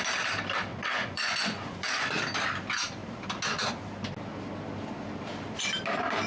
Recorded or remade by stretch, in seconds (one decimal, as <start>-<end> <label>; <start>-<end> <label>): 0.0-0.7 recorded; 0.7-2.2 remade; 2.2-6.3 recorded